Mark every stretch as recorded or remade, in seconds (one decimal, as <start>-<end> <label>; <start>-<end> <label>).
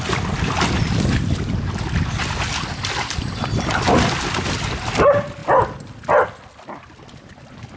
0.0-7.8 recorded